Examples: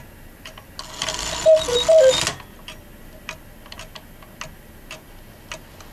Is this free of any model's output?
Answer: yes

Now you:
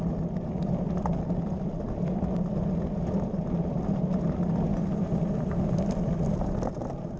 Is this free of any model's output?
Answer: yes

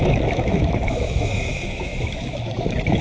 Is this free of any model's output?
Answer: no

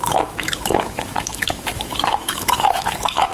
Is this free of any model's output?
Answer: no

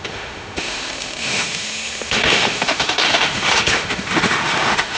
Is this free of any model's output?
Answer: no